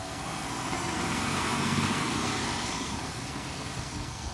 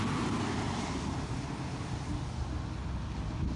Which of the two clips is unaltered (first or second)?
second